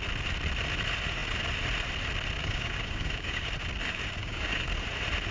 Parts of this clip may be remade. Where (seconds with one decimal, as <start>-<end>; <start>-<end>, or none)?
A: 2.4-3.5; 4.2-4.7